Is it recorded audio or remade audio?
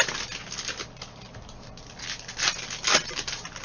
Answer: recorded